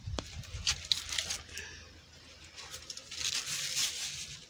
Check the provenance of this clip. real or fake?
real